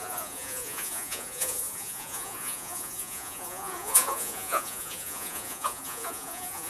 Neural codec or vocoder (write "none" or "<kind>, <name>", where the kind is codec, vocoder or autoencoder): vocoder, Vocos